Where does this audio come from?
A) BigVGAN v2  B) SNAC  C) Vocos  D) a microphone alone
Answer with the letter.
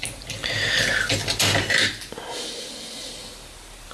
D